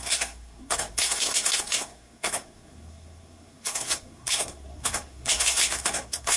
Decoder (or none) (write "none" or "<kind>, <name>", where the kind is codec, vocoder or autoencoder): codec, SNAC